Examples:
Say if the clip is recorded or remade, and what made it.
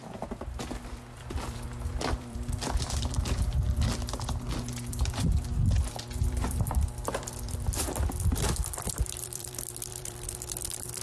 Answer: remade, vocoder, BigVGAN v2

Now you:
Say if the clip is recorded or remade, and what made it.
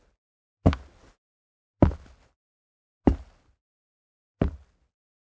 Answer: recorded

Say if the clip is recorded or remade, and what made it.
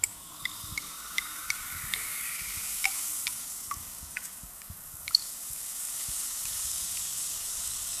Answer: remade, codec, DAC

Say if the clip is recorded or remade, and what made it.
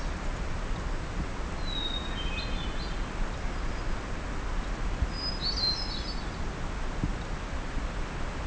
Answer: recorded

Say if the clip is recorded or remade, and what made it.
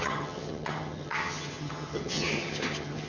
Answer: remade, vocoder, HiFi-GAN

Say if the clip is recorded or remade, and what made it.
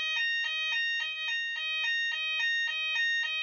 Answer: recorded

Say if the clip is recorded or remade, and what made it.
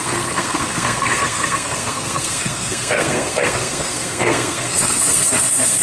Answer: remade, codec, SNAC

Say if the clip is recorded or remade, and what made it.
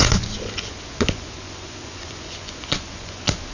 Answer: remade, vocoder, Vocos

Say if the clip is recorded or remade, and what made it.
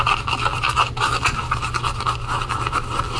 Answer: recorded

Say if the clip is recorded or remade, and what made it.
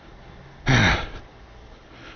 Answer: recorded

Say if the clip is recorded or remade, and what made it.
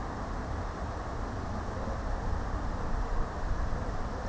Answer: remade, vocoder, BigVGAN v2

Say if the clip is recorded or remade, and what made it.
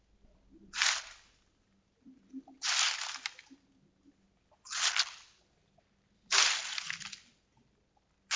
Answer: recorded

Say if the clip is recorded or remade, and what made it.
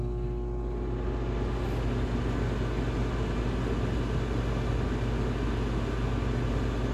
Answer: recorded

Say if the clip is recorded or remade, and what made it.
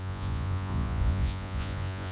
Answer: remade, vocoder, Vocos